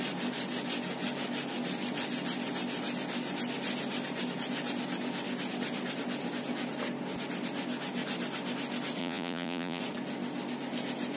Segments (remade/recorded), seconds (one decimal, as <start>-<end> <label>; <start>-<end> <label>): 0.0-9.0 recorded; 9.0-9.8 remade; 9.8-11.2 recorded